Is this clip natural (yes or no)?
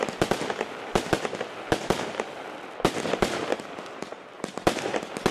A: yes